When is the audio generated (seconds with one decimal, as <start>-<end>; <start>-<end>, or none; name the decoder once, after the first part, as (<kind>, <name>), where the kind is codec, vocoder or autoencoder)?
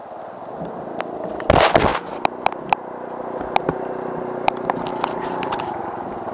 none